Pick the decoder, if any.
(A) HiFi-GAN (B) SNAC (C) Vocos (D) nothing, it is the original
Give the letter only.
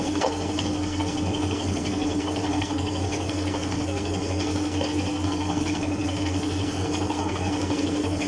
B